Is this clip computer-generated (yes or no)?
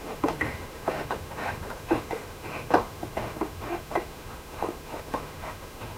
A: yes